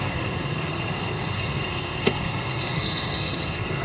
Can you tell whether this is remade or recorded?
remade